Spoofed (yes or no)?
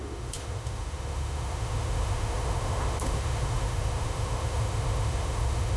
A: yes